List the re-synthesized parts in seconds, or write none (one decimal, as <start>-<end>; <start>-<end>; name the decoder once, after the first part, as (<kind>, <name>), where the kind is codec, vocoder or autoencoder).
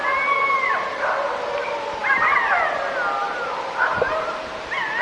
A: none